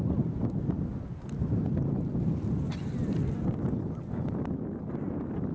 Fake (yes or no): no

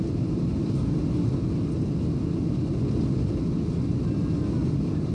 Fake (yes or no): no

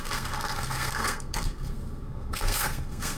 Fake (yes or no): yes